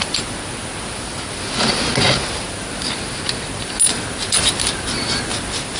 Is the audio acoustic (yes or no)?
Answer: yes